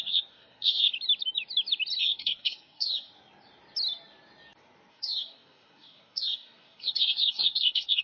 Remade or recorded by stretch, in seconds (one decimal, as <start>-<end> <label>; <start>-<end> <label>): 0.0-0.9 remade; 0.9-2.0 recorded; 2.0-3.1 remade; 3.1-4.9 recorded; 4.9-8.0 remade